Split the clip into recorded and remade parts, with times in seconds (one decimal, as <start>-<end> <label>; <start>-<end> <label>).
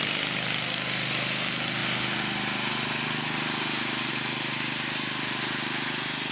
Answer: 0.0-6.3 recorded